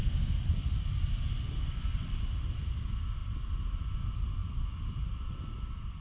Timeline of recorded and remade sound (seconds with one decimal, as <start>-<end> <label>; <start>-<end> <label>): 0.0-3.2 recorded; 3.2-3.9 remade; 3.9-4.4 recorded; 4.4-5.4 remade; 5.4-6.0 recorded